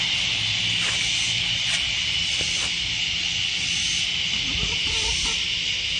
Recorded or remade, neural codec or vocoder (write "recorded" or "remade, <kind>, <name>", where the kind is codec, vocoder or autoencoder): recorded